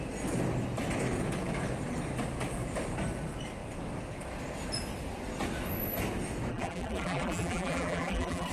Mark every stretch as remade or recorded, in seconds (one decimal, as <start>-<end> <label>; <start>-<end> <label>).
0.0-6.5 recorded; 6.5-8.5 remade